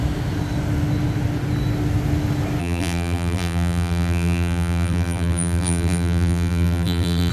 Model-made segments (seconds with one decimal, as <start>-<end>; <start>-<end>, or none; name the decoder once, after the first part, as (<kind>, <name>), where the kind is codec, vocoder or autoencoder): 2.6-7.3 (vocoder, BigVGAN v2)